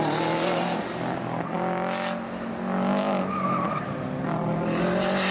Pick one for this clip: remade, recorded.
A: recorded